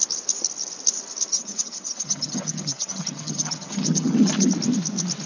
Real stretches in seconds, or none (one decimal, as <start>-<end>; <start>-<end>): 0.0-1.3; 4.5-5.3